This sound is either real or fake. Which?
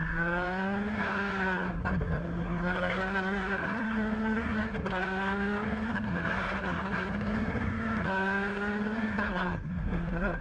fake